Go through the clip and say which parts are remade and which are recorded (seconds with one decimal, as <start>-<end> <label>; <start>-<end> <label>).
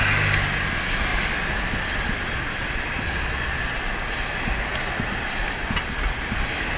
0.0-6.8 recorded